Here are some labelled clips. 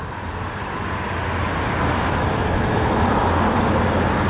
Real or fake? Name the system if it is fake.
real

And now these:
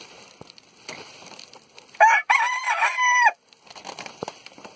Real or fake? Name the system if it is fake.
fake, vocoder, BigVGAN v2